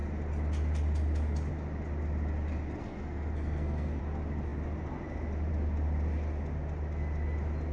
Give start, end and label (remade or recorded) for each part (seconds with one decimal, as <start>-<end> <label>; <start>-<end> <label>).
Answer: 0.0-2.8 recorded; 2.8-4.0 remade; 4.0-7.7 recorded